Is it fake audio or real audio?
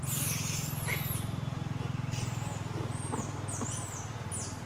real